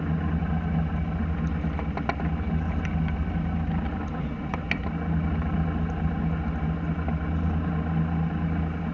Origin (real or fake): real